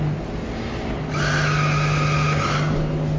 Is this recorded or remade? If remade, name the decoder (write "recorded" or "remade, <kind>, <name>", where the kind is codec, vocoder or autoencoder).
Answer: recorded